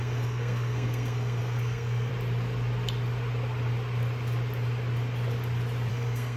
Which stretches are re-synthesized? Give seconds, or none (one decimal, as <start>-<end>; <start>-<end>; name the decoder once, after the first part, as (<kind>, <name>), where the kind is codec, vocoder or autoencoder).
0.0-2.1 (codec, SNAC); 5.9-6.4